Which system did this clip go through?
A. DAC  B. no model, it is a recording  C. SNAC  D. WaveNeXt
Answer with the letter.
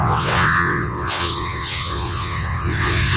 D